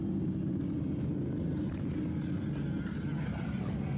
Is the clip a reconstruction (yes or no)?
no